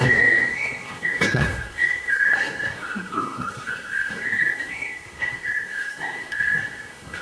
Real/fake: fake